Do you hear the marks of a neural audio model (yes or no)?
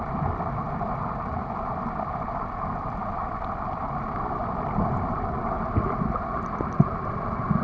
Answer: no